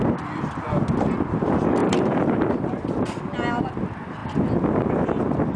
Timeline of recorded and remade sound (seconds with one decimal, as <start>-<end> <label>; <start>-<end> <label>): 0.0-1.8 recorded; 1.8-3.2 remade; 3.2-5.6 recorded